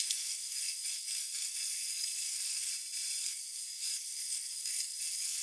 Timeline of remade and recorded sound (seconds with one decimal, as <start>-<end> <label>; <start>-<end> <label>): 0.0-2.7 remade; 2.7-3.2 recorded; 3.2-5.4 remade